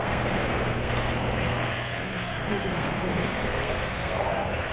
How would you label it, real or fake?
fake